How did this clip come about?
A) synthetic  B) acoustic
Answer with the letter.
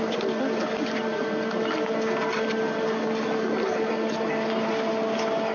B